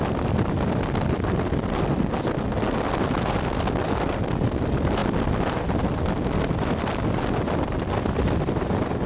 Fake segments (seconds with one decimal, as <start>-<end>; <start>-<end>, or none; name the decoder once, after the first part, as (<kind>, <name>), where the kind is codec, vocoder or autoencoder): none